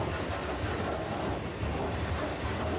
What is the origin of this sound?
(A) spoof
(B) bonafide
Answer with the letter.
B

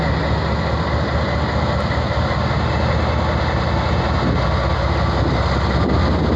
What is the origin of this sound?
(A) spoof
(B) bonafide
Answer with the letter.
B